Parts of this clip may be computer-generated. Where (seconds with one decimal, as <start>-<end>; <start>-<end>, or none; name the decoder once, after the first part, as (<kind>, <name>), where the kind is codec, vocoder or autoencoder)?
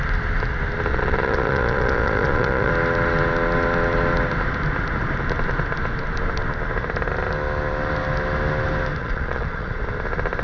0.9-2.7 (vocoder, Vocos); 9.0-9.8